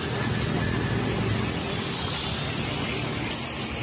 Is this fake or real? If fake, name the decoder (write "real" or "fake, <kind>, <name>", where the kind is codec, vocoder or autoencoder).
real